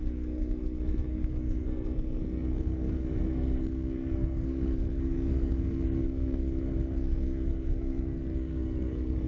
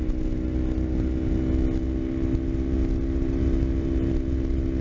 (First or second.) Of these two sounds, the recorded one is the second